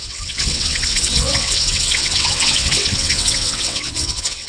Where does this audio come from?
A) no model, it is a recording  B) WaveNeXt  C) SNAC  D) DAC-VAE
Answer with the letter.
B